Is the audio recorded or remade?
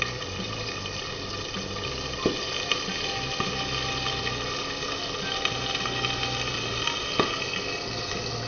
recorded